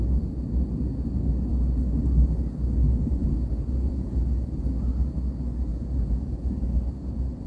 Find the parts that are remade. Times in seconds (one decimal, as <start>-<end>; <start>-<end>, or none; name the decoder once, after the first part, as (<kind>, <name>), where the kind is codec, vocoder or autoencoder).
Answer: 3.2-4.7 (vocoder, Vocos); 5.7-6.8